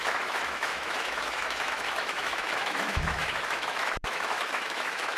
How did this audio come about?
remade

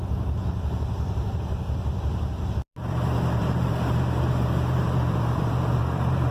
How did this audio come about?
remade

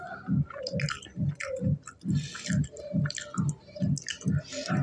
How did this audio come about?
recorded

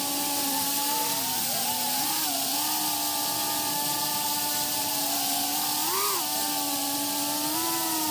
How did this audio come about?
recorded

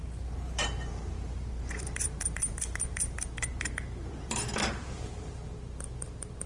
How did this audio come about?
remade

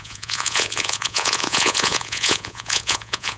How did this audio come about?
remade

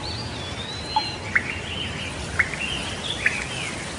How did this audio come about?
recorded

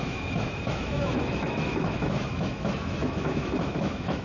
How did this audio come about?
remade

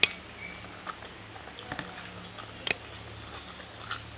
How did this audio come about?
recorded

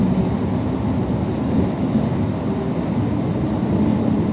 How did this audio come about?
recorded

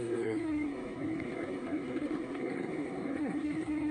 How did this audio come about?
remade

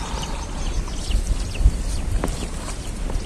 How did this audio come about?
recorded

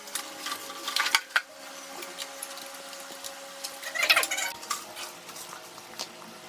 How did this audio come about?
recorded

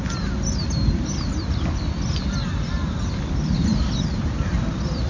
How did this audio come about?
recorded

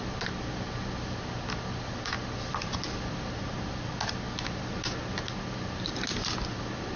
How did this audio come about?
recorded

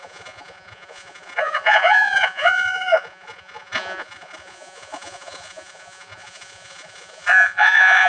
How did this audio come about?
remade